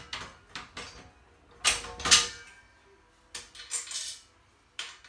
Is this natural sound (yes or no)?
yes